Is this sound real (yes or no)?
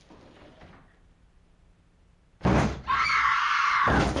yes